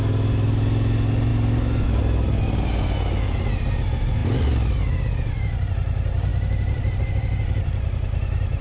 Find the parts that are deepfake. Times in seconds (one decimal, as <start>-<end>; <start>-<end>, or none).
none